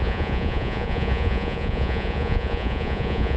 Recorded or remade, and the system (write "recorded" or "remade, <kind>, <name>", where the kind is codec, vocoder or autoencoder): remade, vocoder, Vocos